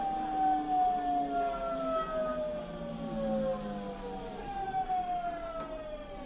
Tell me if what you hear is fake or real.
real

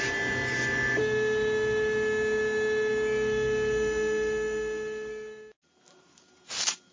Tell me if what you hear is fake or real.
real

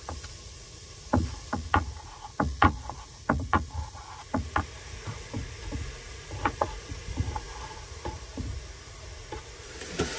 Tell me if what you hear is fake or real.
fake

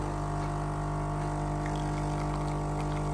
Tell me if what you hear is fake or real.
real